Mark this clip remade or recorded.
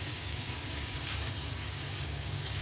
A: remade